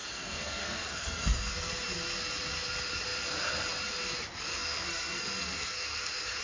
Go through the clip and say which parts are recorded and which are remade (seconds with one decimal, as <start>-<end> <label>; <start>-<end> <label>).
0.0-1.7 remade; 1.7-4.5 recorded; 4.5-6.4 remade